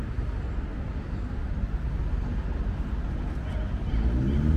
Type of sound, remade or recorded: recorded